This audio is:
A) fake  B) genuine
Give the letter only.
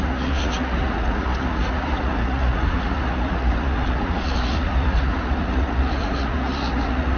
A